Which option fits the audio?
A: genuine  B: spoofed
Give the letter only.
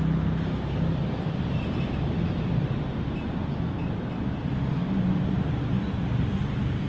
A